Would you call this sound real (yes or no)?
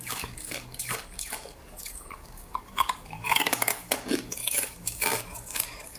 no